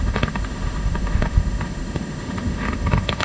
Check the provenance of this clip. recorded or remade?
remade